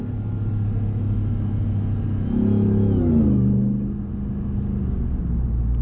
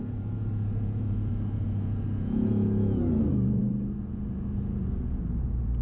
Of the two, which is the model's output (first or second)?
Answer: second